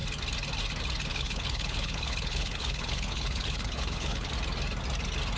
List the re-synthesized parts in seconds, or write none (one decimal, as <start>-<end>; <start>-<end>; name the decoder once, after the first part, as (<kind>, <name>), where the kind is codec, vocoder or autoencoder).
1.1-4.3 (codec, HILCodec)